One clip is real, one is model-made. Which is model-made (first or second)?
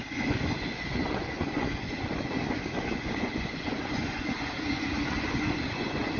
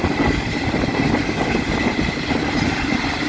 first